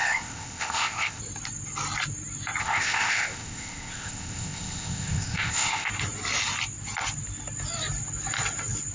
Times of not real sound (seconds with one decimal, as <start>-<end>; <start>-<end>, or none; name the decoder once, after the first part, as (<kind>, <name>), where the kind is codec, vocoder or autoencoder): 0.0-1.2 (codec, ZipCodec); 2.6-5.9